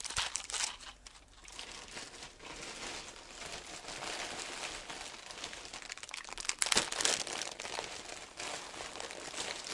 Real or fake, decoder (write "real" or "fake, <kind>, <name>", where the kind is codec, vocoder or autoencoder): real